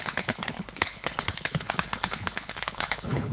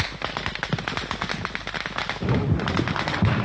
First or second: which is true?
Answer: second